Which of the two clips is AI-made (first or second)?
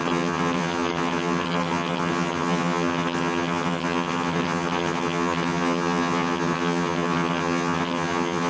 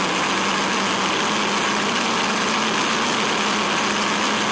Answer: first